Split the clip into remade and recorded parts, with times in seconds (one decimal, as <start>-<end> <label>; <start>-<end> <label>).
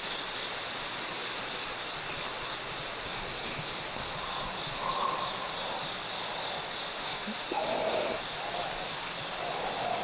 0.0-6.9 recorded; 6.9-7.6 remade; 7.6-10.0 recorded